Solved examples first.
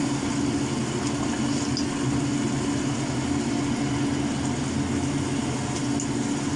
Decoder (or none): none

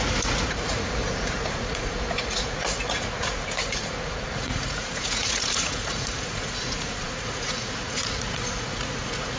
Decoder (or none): vocoder, Vocos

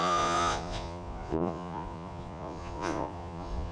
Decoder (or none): vocoder, Vocos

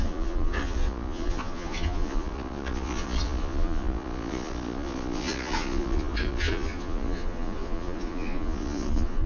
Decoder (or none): vocoder, Vocos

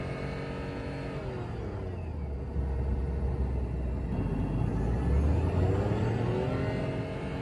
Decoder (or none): none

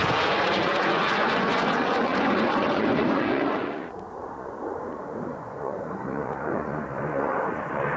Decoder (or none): vocoder, Vocos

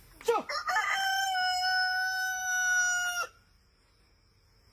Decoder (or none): none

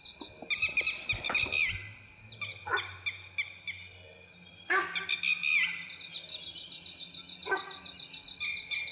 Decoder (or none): none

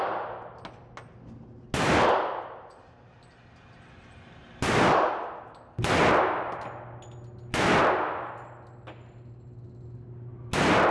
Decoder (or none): none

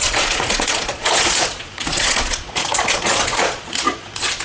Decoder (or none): vocoder, Vocos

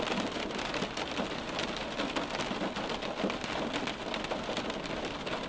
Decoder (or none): none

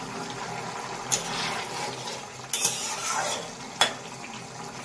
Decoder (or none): none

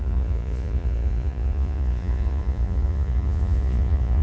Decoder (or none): vocoder, Vocos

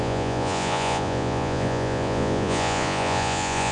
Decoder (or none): vocoder, Vocos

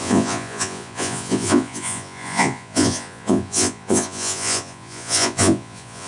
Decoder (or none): vocoder, Vocos